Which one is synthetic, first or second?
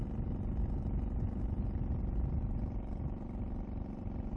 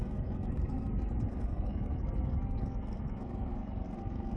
second